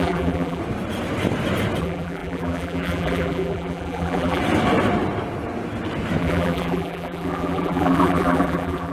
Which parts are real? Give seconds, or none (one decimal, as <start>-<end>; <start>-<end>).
0.6-1.8; 4.4-6.2